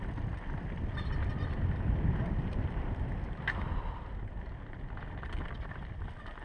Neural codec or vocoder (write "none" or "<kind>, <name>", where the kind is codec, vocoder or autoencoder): vocoder, BigVGAN v2